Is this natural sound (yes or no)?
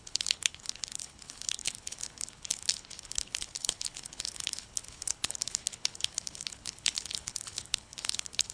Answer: no